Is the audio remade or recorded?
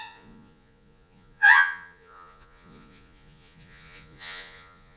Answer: remade